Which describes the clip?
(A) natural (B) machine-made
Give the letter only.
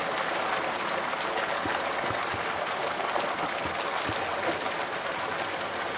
A